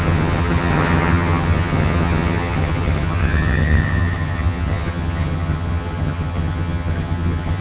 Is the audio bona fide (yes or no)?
no